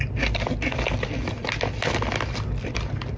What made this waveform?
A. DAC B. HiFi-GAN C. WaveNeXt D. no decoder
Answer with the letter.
D